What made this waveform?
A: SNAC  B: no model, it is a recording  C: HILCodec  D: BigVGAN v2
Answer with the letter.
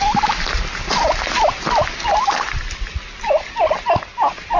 B